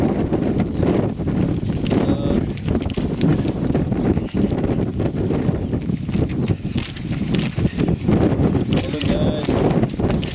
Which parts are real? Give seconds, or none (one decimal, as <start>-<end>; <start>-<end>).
0.0-10.3